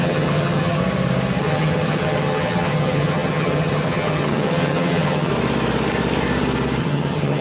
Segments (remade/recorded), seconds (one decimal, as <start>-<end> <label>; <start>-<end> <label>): 0.0-0.8 remade; 0.8-1.4 recorded; 1.4-5.3 remade; 5.3-6.8 recorded; 6.8-7.4 remade